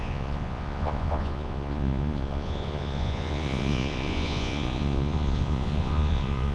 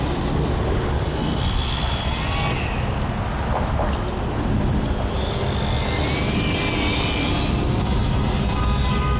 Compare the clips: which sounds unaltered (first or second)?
second